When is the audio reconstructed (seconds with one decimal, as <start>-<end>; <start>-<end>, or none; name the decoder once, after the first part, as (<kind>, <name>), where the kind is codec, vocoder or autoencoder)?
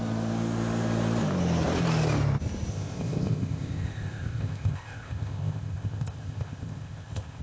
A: 2.7-7.4 (codec, ZipCodec)